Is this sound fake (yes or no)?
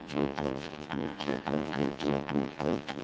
yes